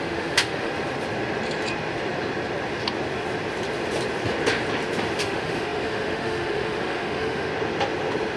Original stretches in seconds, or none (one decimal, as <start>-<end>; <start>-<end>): 0.7-5.2; 7.5-8.4

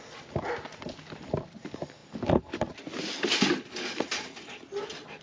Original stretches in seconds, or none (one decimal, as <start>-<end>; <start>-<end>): 0.0-5.2

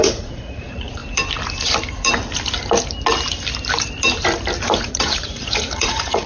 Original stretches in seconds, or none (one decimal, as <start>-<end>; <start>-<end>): 1.0-4.8

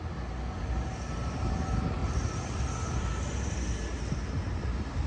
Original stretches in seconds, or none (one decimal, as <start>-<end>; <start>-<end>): 0.0-5.1

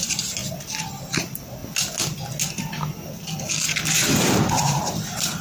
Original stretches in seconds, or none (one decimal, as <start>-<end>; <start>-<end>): 0.4-1.0; 1.6-4.8

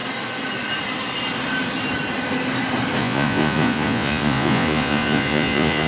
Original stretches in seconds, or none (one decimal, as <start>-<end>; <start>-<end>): 0.0-3.0

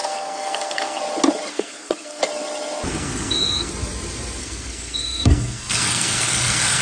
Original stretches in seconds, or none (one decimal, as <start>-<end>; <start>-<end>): 1.0-1.5; 2.2-2.9; 3.7-4.4